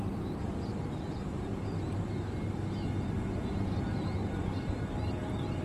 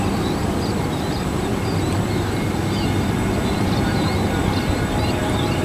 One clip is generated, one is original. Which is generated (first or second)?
second